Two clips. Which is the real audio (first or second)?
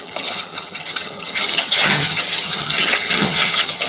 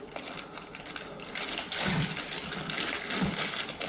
second